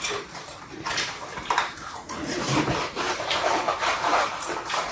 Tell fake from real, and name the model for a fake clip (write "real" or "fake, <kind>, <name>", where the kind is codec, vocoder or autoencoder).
fake, vocoder, BigVGAN v2